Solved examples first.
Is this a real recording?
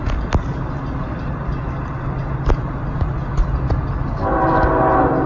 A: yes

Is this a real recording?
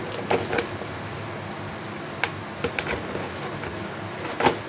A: yes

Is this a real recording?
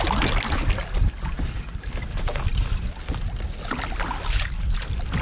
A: yes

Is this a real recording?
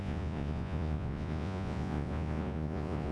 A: no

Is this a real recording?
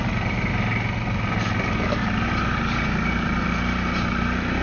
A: yes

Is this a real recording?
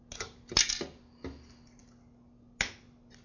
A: yes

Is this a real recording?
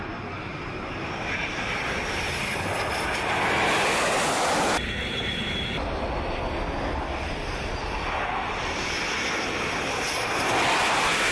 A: yes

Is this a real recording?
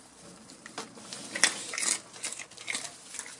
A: yes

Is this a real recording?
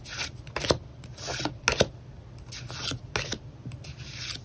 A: yes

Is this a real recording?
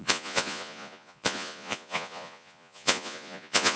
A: no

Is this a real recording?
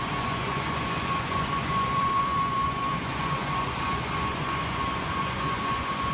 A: no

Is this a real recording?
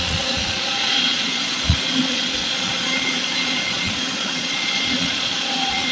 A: no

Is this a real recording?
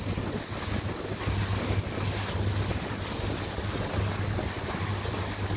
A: yes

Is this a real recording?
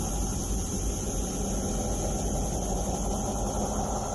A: yes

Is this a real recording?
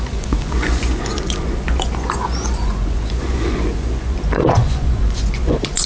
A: no